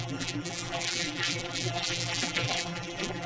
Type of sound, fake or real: fake